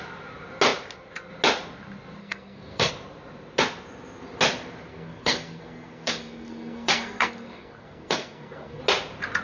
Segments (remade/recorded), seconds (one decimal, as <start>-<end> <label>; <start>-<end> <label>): 0.0-2.2 recorded; 2.2-2.9 remade; 2.9-4.9 recorded; 4.9-8.8 remade; 8.8-9.4 recorded